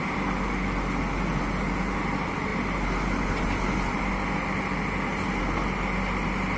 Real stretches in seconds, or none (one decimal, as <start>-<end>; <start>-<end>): 0.0-6.6